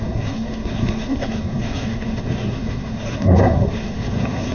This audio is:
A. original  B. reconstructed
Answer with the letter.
B